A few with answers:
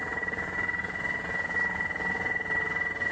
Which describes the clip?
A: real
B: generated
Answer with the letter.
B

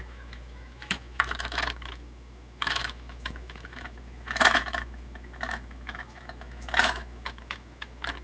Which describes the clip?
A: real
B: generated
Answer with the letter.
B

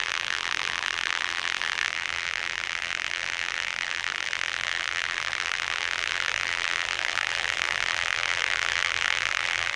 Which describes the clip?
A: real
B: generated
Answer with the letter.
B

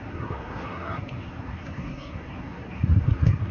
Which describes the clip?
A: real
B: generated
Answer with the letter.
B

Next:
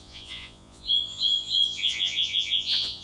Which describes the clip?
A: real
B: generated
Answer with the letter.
B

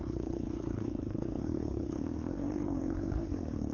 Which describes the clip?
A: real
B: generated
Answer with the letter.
B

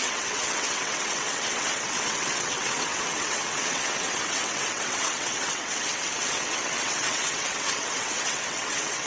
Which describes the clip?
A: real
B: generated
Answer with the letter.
B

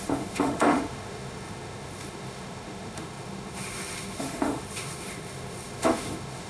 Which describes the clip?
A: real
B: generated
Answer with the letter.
B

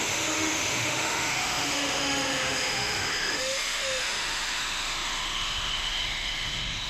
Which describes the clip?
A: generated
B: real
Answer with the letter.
A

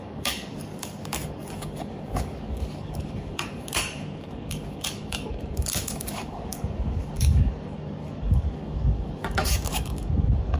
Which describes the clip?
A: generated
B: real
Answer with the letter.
A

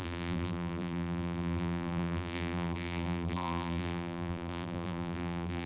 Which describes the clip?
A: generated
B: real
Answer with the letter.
A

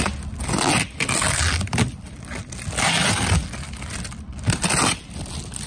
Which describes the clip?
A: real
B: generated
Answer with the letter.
A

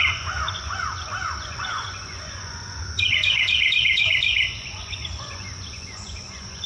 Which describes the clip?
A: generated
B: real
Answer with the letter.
A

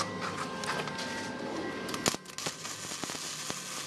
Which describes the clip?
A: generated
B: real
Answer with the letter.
B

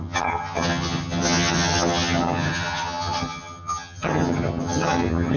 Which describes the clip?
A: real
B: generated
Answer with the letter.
B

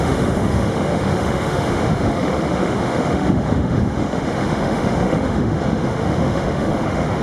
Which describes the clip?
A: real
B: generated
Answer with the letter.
B